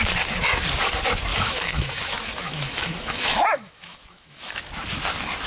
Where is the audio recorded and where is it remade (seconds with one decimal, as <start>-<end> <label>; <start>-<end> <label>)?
0.0-1.3 recorded; 1.3-4.6 remade; 4.6-5.5 recorded